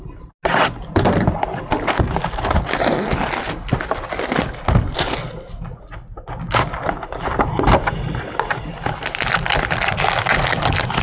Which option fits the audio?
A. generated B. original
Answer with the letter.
B